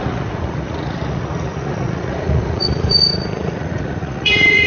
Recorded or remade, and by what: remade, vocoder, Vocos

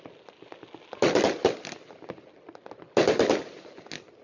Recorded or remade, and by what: recorded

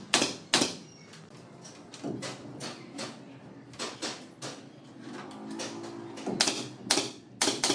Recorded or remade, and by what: recorded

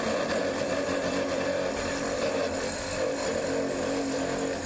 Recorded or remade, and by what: recorded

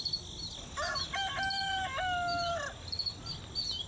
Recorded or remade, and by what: recorded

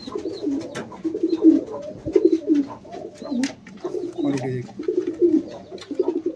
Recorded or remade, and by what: recorded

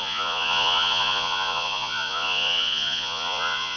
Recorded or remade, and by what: remade, vocoder, Vocos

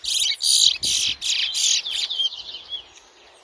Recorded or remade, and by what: recorded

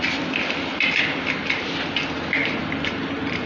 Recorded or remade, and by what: recorded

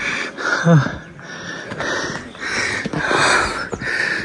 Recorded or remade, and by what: recorded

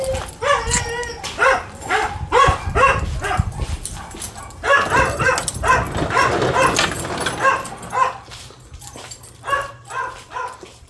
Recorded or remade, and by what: recorded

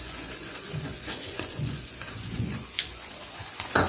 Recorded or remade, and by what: remade, vocoder, Vocos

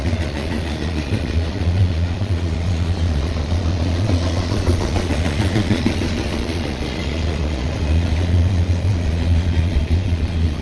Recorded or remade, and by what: remade, vocoder, Vocos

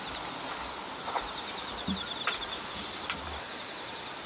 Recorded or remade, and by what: recorded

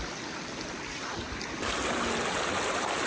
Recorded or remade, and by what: recorded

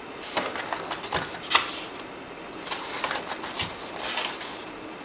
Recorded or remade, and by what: recorded